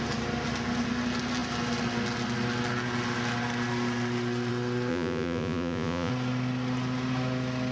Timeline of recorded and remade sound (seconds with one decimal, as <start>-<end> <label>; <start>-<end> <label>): 0.0-4.9 recorded; 4.9-6.1 remade; 6.1-7.7 recorded